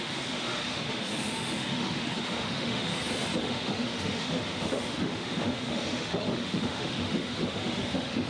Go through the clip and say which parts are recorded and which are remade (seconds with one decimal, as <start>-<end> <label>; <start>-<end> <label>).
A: 0.0-2.9 remade; 2.9-3.4 recorded; 3.4-8.3 remade